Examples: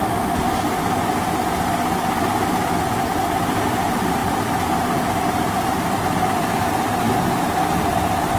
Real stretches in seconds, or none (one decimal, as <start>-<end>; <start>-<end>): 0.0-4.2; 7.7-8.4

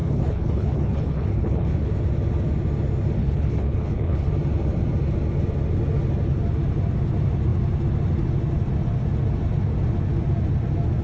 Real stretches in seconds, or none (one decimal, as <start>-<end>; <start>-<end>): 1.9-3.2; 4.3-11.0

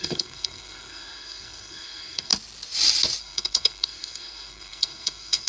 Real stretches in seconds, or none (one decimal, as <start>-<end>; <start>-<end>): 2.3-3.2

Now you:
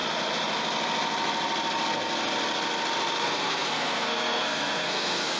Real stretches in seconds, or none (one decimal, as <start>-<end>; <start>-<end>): 0.0-3.2

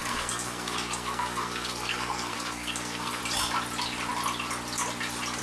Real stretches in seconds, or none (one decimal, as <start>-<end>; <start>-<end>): 3.2-5.4